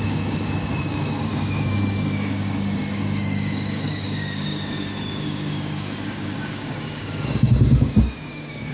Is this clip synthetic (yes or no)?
yes